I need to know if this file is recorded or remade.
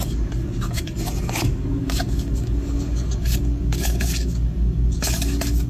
remade